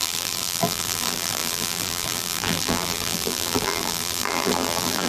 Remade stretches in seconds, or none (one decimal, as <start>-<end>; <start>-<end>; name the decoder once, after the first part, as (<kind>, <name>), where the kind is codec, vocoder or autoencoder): 0.0-5.1 (vocoder, BigVGAN v2)